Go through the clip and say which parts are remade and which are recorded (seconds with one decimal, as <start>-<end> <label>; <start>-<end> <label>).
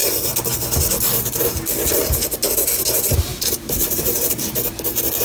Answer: 0.0-0.5 remade; 0.5-3.3 recorded; 3.3-4.5 remade; 4.5-5.2 recorded